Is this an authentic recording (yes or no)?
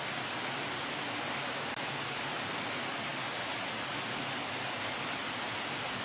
yes